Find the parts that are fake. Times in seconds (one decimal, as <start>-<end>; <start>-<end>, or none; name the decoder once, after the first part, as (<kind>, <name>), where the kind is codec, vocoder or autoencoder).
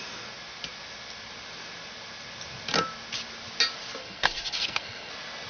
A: 4.0-5.1 (codec, SNAC)